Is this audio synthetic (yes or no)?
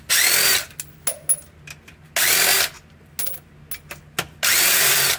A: no